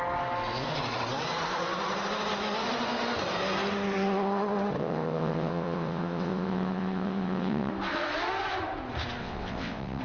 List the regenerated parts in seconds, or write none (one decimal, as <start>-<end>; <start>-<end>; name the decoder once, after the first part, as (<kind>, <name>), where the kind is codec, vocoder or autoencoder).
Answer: 4.8-7.7 (vocoder, WaveNeXt); 9.2-10.0